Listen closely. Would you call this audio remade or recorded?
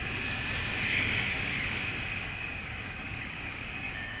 remade